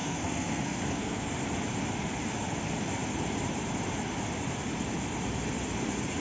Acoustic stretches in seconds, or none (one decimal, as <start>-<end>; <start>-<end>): 1.3-6.2